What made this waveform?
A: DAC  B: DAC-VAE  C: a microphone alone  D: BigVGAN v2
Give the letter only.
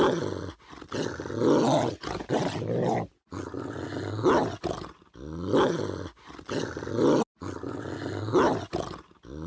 C